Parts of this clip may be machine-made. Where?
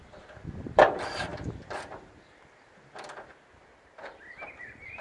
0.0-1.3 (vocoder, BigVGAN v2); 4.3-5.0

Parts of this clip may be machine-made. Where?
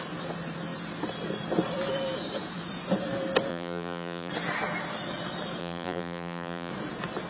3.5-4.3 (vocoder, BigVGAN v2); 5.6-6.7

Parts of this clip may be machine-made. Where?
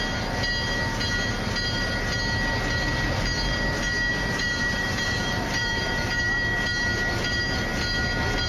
4.1-6.2 (vocoder, BigVGAN v2)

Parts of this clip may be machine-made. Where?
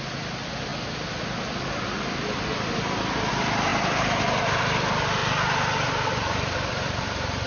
0.0-0.7 (vocoder, BigVGAN v2); 3.3-5.2; 6.3-7.5